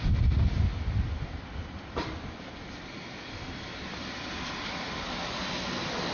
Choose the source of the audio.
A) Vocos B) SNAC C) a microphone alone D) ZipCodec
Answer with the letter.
C